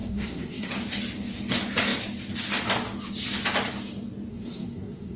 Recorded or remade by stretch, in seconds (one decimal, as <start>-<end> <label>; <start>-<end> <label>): 0.0-0.7 remade; 0.7-4.3 recorded; 4.3-5.2 remade